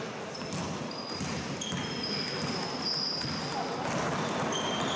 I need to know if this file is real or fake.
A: real